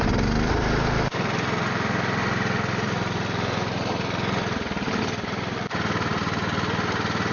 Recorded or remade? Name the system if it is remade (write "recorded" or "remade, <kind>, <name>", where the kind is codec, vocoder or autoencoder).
recorded